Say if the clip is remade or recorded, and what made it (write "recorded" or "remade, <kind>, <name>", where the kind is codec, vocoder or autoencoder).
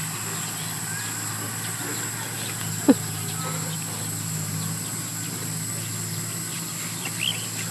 recorded